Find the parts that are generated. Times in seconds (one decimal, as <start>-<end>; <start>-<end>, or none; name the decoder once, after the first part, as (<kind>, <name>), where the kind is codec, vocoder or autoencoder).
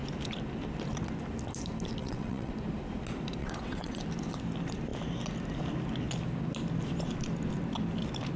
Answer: 2.0-2.5 (vocoder, WaveNeXt); 3.4-4.0